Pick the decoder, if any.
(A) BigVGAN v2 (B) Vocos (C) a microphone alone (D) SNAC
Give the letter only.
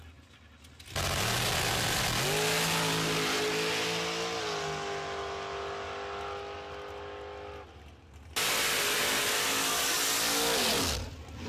C